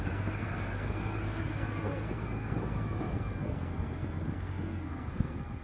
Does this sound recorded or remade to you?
remade